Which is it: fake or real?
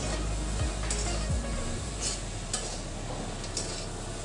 real